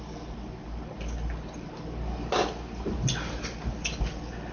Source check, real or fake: real